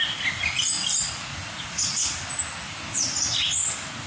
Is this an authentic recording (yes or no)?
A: yes